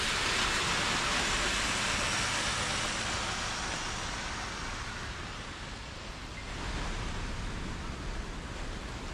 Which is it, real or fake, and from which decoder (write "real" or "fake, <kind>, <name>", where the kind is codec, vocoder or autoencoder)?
real